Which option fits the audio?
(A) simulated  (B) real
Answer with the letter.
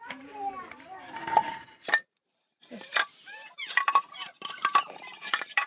A